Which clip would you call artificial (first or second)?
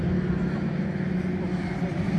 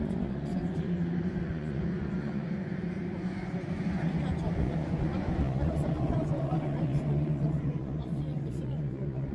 second